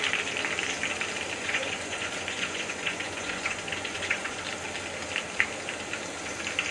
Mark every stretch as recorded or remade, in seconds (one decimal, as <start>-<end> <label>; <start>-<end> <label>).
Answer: 0.0-1.4 recorded; 1.4-4.4 remade; 4.4-6.7 recorded